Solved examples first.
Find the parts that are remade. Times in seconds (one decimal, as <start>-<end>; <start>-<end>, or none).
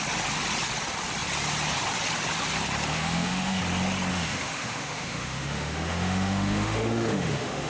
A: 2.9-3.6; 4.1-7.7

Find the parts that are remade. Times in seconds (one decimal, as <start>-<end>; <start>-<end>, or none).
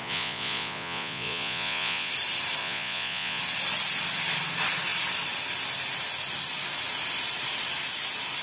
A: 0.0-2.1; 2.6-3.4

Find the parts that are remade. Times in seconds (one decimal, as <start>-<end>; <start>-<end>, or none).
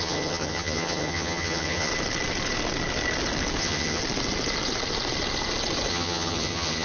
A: 0.0-1.9; 3.6-4.0; 5.9-6.8